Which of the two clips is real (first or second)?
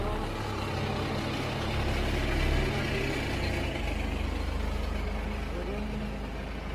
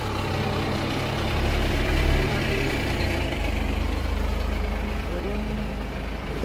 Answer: first